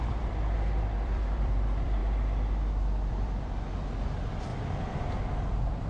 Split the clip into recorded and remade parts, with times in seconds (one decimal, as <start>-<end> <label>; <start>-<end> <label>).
0.0-2.0 remade; 2.0-3.1 recorded; 3.1-4.5 remade; 4.5-5.5 recorded; 5.5-5.9 remade